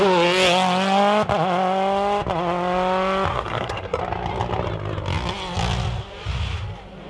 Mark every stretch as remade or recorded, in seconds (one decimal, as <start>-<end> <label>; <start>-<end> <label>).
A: 0.0-3.3 recorded; 3.3-4.0 remade; 4.0-7.1 recorded